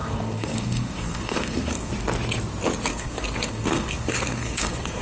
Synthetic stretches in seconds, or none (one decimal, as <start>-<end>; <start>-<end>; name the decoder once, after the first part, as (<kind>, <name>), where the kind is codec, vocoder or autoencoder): 0.0-1.9 (codec, SNAC); 2.9-5.0